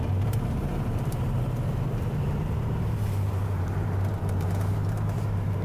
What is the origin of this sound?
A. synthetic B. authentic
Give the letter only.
A